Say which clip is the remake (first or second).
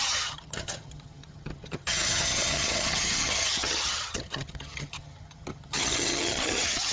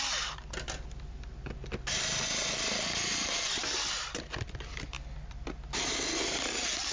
first